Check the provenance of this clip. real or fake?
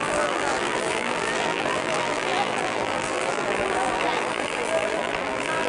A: fake